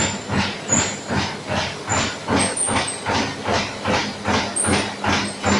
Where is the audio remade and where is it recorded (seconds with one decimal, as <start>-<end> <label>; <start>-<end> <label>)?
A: 0.0-5.6 recorded